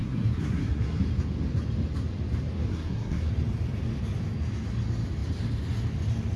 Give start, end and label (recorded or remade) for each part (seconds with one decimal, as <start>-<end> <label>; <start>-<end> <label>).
0.0-1.0 remade; 1.0-2.7 recorded; 2.7-3.3 remade; 3.3-6.4 recorded